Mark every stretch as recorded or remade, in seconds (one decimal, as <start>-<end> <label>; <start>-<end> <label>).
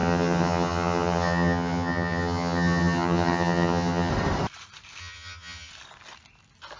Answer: 0.0-4.1 remade; 4.1-5.0 recorded; 5.0-5.7 remade; 5.7-6.8 recorded